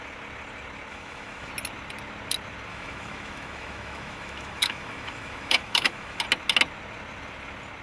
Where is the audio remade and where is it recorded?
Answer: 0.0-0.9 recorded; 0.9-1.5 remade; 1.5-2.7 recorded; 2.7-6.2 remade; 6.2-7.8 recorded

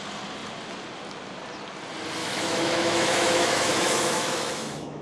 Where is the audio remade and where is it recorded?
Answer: 0.0-2.2 recorded; 2.2-5.0 remade

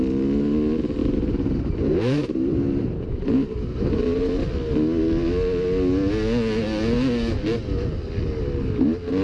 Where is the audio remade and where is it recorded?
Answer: 0.0-1.0 recorded; 1.0-4.2 remade; 4.2-9.2 recorded

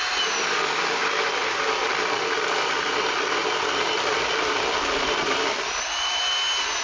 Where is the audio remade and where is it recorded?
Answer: 0.0-3.4 recorded; 3.4-6.2 remade; 6.2-6.8 recorded

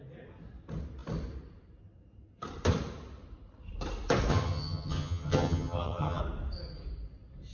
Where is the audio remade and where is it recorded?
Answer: 0.0-4.3 recorded; 4.3-6.2 remade; 6.2-7.5 recorded

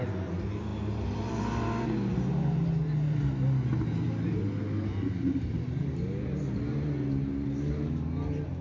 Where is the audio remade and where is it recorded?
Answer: 0.0-8.6 recorded